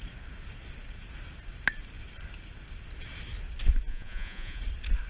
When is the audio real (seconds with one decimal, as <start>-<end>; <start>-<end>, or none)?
0.0-3.9; 4.6-5.1